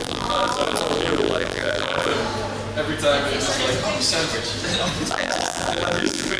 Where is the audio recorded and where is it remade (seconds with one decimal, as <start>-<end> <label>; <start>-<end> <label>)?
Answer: 0.0-2.1 remade; 2.1-5.1 recorded; 5.1-6.4 remade